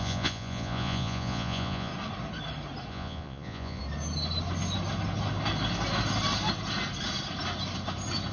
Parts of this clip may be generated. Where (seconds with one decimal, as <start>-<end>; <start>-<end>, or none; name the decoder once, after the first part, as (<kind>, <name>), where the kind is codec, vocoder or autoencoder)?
0.0-1.9 (vocoder, Vocos); 2.9-3.8